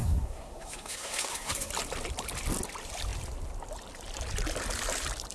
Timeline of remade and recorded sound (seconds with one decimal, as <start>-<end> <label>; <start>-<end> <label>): 0.0-1.7 remade; 1.7-5.3 recorded